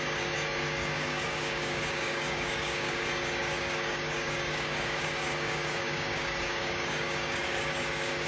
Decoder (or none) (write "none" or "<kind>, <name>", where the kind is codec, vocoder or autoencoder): codec, DAC